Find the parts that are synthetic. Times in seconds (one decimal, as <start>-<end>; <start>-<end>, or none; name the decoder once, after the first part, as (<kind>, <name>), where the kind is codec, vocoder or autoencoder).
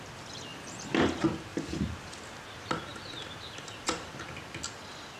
0.5-1.0 (vocoder, BigVGAN v2); 1.5-2.1